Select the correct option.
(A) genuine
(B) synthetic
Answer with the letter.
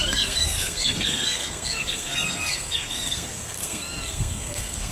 B